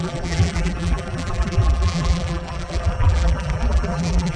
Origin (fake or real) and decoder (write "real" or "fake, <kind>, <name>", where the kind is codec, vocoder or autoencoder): fake, vocoder, BigVGAN v2